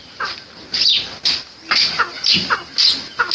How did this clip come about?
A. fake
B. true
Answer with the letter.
B